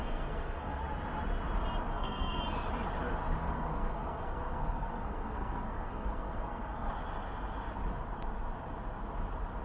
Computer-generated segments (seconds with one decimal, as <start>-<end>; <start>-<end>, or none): 0.0-0.8; 1.9-2.4; 3.4-6.9